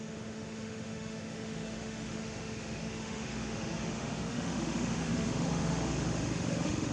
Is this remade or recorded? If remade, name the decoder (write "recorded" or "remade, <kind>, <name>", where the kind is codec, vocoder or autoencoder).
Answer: remade, autoencoder, DAC-VAE